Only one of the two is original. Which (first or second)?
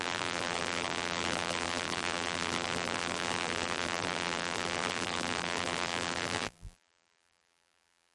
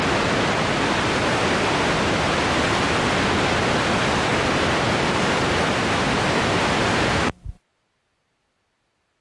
second